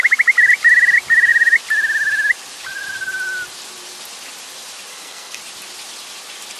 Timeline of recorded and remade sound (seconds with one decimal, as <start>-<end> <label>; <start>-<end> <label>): 0.0-4.9 recorded; 4.9-5.4 remade; 5.4-6.6 recorded